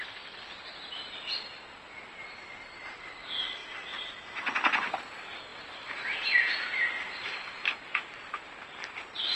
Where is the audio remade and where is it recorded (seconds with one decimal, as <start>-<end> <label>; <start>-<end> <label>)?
0.0-3.6 remade; 3.6-5.0 recorded; 5.0-9.4 remade